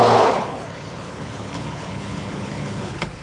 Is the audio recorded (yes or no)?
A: no